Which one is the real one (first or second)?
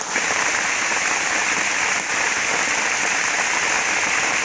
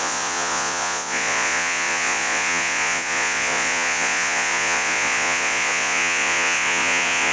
first